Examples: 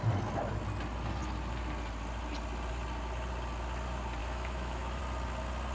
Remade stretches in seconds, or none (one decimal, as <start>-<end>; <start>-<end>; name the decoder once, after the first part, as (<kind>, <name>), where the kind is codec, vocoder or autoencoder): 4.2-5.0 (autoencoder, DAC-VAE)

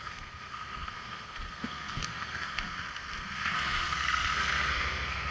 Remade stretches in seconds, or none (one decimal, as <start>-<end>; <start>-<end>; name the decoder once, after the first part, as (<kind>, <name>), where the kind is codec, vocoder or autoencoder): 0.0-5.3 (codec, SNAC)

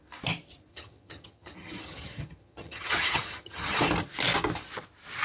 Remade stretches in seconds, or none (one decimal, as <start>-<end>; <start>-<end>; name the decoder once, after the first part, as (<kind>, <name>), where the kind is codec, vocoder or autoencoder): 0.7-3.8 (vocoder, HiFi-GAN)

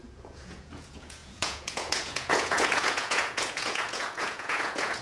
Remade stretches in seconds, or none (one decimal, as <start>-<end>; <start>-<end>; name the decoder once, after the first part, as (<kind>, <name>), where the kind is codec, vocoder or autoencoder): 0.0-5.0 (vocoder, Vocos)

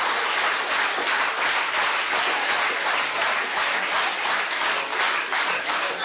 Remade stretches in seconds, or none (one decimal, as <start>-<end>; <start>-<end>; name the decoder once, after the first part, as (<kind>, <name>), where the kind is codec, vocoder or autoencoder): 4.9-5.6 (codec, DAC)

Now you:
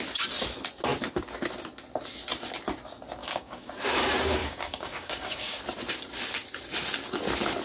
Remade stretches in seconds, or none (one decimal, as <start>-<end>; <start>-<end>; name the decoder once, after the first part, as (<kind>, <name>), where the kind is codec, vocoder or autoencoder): 3.2-3.7 (codec, DAC); 4.4-5.6